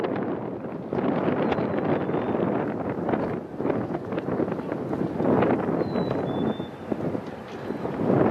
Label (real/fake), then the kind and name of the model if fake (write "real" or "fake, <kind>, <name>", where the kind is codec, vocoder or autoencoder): real